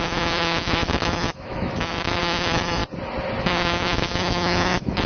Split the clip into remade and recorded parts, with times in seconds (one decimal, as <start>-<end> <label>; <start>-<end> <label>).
0.0-2.8 remade; 2.8-3.4 recorded; 3.4-5.1 remade